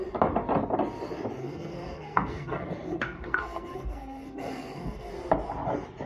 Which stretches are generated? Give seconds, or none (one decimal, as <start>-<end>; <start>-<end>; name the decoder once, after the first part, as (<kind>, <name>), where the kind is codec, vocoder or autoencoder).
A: 1.4-5.1 (codec, SNAC)

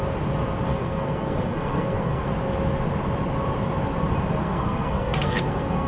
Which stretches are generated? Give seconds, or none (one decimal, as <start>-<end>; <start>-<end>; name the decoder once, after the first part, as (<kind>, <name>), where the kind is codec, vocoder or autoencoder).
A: 0.7-2.3 (codec, SNAC); 4.4-5.9

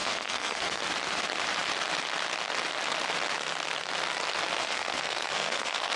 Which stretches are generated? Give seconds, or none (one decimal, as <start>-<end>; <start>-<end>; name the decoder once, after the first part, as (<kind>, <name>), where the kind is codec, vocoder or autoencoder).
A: 0.0-0.8 (codec, SNAC); 4.6-6.0